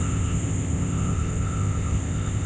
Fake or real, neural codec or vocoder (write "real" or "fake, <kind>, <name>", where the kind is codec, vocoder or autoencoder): fake, codec, ZipCodec